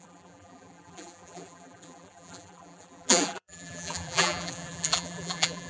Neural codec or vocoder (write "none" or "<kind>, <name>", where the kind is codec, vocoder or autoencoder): vocoder, BigVGAN v2